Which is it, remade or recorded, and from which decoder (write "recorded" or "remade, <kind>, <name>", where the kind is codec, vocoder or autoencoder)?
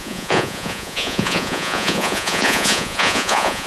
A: remade, vocoder, Vocos